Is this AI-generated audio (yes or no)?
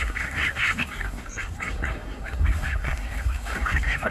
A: yes